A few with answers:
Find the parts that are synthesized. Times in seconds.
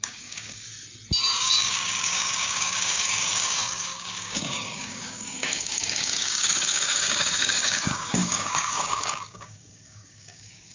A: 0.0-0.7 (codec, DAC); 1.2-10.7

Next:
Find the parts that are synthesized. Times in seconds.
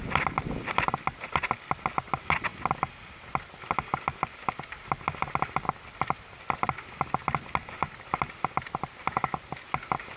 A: none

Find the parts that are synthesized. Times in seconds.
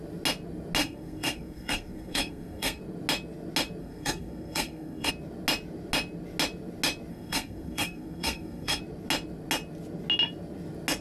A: 0.8-2.8 (codec, SNAC); 3.8-5.1; 7.1-8.8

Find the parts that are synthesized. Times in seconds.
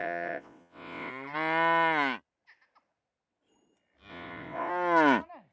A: 0.0-1.1 (vocoder, WaveNeXt); 4.1-4.7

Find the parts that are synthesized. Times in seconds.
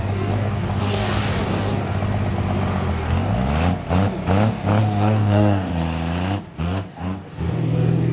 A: 0.0-2.0 (codec, DAC); 2.9-3.3; 4.8-5.7; 6.6-8.1